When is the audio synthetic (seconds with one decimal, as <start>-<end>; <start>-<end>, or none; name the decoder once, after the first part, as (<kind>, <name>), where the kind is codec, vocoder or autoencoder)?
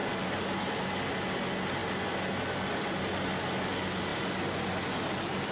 none